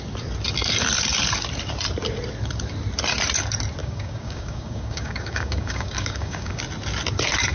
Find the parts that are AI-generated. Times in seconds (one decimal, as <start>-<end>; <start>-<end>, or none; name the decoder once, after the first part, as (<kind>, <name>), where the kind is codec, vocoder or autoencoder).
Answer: 3.8-6.6 (codec, DAC)